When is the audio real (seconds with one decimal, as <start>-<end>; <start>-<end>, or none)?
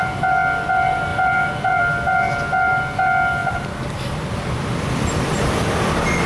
0.0-1.1; 1.8-3.4